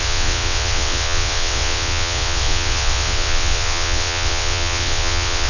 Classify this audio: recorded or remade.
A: remade